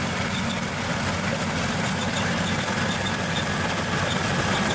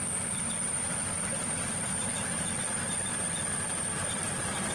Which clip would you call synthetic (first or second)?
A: second